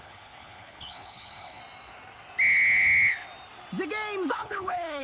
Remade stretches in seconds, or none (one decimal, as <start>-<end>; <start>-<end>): 0.0-1.6; 4.3-5.0